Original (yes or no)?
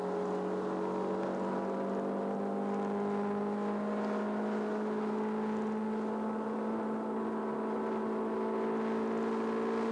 yes